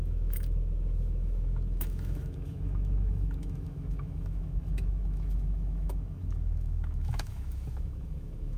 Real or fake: fake